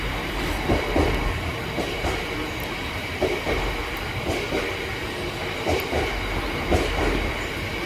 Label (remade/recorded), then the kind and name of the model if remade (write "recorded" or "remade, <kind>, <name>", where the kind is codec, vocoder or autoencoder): recorded